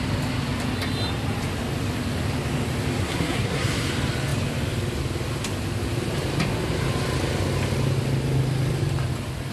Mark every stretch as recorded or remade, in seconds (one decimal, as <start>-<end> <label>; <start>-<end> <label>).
0.0-3.0 recorded; 3.0-3.9 remade; 3.9-9.5 recorded